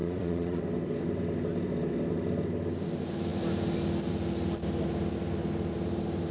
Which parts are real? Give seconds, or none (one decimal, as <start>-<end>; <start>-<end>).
0.6-6.3